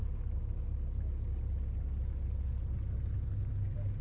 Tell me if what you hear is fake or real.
real